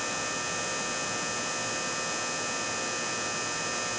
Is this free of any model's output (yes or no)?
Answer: yes